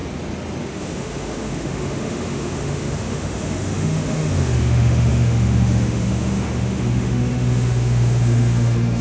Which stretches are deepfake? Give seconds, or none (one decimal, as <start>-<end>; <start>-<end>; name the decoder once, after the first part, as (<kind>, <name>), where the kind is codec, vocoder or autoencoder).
0.6-9.0 (autoencoder, DAC-VAE)